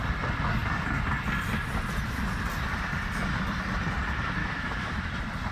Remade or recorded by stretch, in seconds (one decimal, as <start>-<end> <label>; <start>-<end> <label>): 0.0-4.4 recorded; 4.4-5.1 remade; 5.1-5.5 recorded